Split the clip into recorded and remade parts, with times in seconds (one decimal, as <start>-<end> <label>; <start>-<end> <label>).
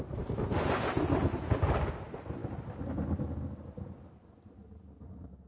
0.0-5.5 recorded